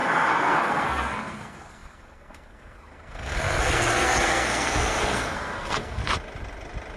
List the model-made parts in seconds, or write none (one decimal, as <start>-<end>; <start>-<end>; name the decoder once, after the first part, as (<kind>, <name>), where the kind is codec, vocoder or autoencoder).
0.0-6.0 (codec, SNAC)